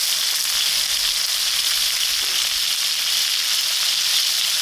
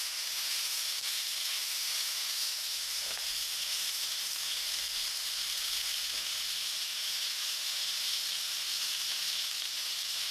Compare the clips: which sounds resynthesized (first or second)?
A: second